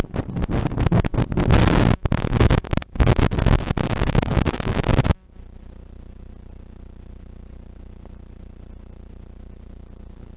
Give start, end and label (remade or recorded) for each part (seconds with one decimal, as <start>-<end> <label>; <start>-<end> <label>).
0.0-1.6 recorded; 1.6-5.3 remade; 5.3-10.4 recorded

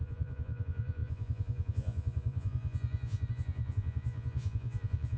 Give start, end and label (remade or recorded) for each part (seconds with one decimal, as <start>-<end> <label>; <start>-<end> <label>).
0.0-5.2 remade

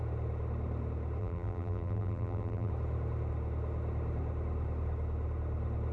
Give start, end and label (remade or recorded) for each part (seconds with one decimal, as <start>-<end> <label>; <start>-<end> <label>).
0.0-1.2 recorded; 1.2-2.7 remade; 2.7-5.9 recorded

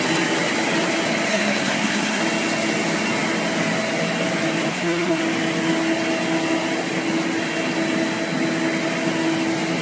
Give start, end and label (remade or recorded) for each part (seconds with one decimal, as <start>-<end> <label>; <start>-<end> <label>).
0.0-1.3 recorded; 1.3-2.2 remade; 2.2-4.7 recorded; 4.7-5.2 remade; 5.2-9.8 recorded

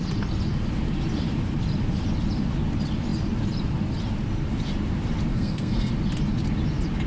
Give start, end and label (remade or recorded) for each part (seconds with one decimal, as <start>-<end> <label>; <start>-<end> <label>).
0.0-5.3 recorded; 5.3-5.9 remade; 5.9-7.1 recorded